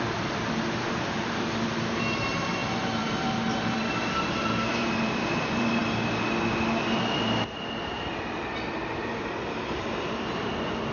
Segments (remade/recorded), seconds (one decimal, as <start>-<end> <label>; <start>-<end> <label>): 0.0-5.8 remade; 5.8-9.8 recorded; 9.8-10.9 remade